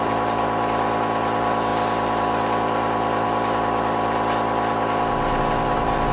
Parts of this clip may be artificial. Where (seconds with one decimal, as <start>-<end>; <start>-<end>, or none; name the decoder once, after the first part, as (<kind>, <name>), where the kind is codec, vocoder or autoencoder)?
none